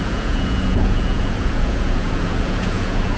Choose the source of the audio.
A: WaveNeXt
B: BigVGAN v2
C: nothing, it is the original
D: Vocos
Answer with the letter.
D